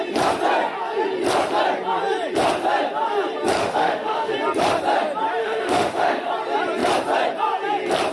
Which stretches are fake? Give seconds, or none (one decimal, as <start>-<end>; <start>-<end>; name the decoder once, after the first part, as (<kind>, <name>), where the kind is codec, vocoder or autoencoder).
3.6-4.3 (autoencoder, DAC-VAE); 5.4-6.3